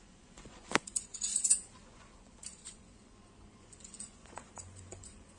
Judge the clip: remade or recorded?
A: remade